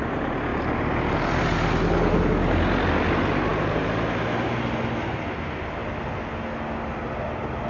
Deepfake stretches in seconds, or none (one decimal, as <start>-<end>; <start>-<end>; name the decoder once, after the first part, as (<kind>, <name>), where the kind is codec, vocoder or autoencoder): none